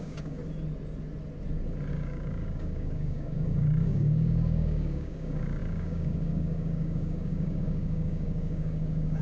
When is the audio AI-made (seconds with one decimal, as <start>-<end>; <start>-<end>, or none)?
0.0-0.4; 1.9-9.2